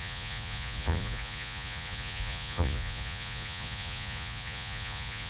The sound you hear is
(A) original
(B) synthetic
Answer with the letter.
B